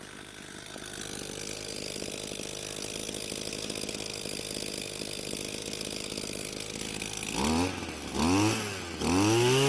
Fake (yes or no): no